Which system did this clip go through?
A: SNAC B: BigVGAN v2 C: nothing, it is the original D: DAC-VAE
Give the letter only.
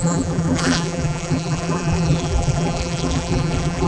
B